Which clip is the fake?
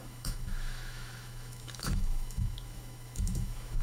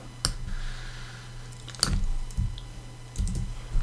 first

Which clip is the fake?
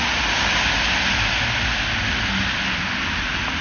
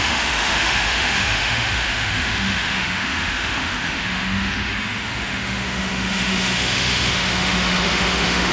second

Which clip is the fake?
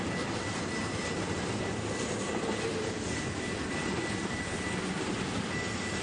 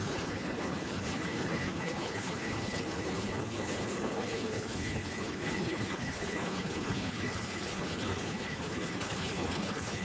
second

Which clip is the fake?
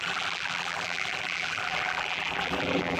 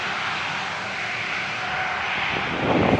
first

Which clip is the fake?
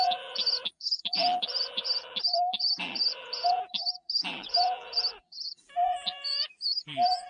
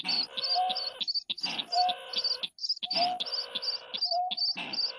first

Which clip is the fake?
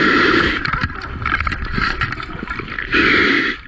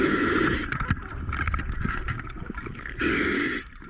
first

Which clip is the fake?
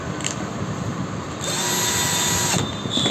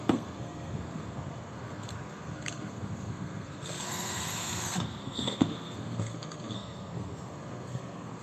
second